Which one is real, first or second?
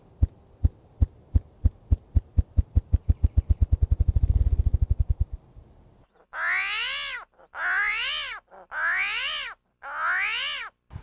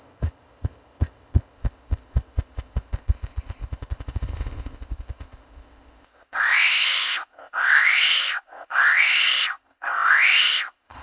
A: first